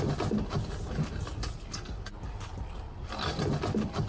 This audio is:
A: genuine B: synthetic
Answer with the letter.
A